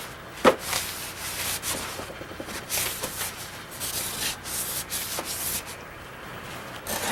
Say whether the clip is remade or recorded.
recorded